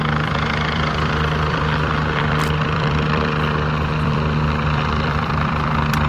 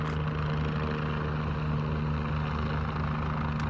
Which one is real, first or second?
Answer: second